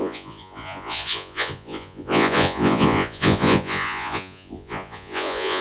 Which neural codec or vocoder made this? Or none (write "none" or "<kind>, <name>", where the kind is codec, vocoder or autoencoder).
vocoder, Vocos